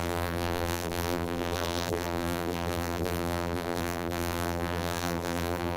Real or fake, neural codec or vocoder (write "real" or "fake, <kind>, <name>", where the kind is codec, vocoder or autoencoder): fake, vocoder, BigVGAN v2